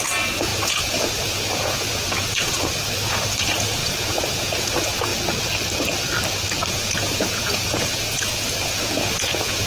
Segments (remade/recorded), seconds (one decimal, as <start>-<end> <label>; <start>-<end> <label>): 0.0-5.1 remade; 5.1-6.7 recorded; 6.7-9.7 remade